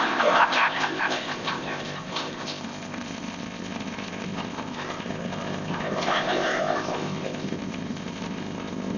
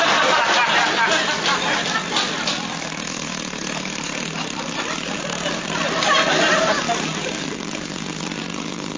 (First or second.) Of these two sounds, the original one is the second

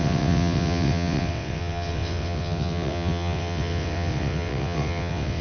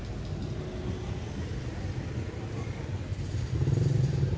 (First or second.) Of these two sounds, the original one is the second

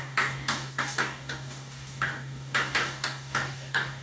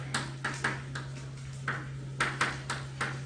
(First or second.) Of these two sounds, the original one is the second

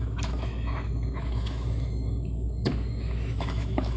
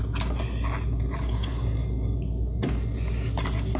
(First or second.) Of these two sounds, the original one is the second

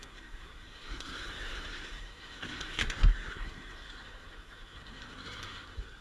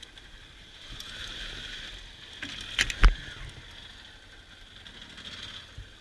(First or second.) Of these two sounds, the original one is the second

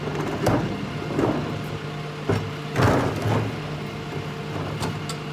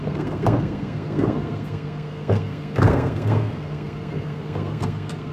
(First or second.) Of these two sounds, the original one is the first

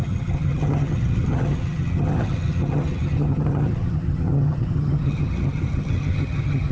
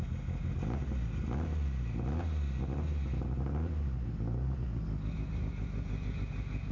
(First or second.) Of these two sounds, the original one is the second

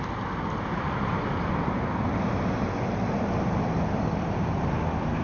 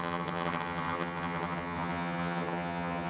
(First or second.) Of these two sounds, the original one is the first